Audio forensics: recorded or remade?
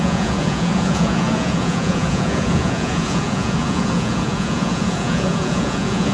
remade